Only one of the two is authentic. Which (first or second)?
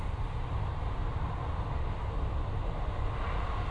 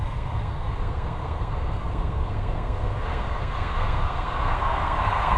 first